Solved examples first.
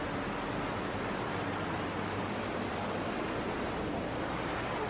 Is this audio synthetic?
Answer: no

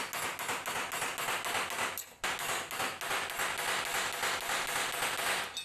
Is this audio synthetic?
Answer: no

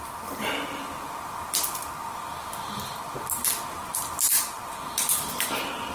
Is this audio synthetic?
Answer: no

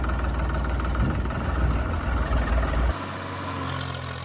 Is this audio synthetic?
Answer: no